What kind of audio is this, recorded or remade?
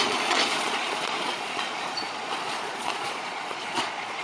remade